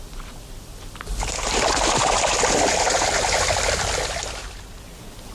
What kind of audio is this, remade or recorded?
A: remade